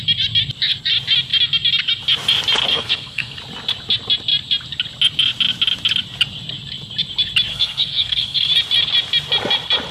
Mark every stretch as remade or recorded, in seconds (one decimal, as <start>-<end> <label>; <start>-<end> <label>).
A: 0.0-2.7 recorded; 2.7-3.4 remade; 3.4-7.5 recorded; 7.5-8.5 remade; 8.5-9.9 recorded